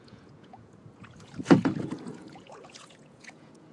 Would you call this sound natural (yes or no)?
no